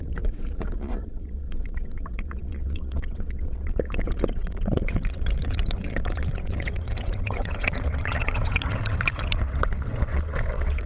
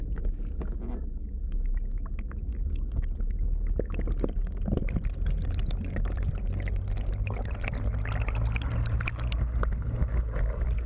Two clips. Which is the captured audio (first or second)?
second